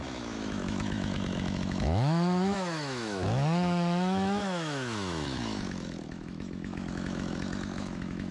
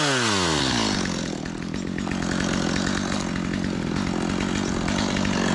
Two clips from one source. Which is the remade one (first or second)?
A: first